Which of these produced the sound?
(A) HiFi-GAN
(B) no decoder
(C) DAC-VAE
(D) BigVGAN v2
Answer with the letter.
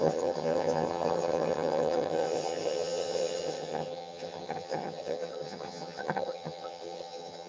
A